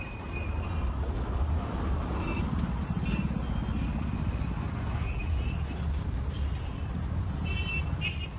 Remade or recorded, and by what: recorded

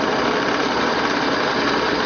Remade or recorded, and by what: remade, vocoder, BigVGAN v2